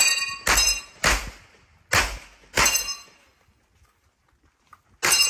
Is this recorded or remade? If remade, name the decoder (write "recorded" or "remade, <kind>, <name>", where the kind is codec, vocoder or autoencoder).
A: recorded